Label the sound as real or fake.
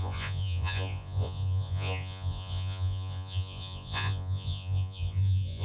fake